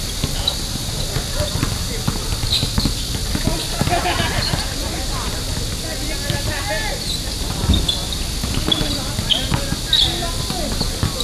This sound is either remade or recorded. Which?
recorded